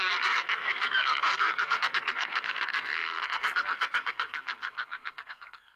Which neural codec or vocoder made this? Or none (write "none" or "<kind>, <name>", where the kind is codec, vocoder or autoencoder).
codec, SNAC